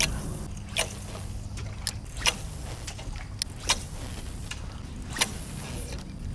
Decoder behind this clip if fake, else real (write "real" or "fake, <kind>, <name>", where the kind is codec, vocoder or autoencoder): real